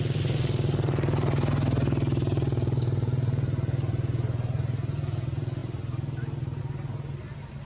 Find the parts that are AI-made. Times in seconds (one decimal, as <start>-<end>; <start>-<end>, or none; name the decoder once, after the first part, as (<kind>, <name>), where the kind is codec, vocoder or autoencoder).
none